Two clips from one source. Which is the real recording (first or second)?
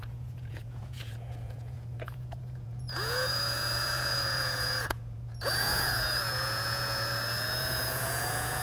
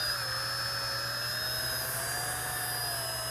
second